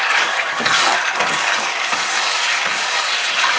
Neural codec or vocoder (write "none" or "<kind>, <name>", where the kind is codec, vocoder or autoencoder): codec, DAC